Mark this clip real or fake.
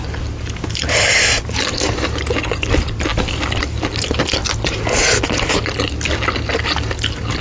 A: real